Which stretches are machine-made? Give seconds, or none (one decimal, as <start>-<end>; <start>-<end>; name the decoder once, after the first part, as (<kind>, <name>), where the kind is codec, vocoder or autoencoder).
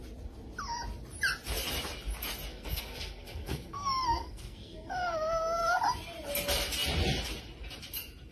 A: 2.5-5.8 (codec, SNAC)